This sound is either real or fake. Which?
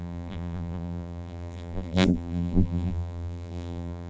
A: fake